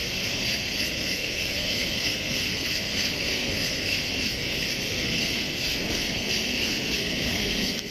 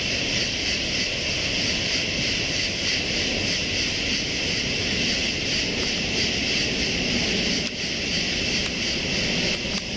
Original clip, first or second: second